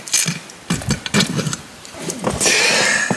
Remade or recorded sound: recorded